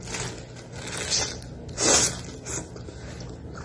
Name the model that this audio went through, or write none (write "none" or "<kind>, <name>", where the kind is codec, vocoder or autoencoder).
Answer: none